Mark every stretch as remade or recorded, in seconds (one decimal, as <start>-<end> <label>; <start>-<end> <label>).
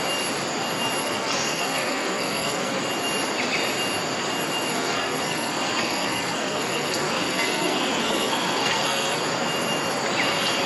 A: 0.0-1.0 recorded; 1.0-2.8 remade; 2.8-4.7 recorded; 4.7-9.2 remade; 9.2-10.7 recorded